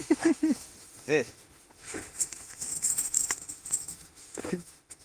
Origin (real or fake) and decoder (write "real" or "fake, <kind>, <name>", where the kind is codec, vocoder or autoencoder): fake, autoencoder, DAC-VAE